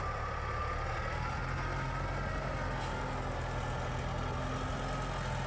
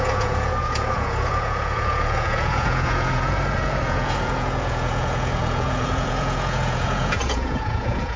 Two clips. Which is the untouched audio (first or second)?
first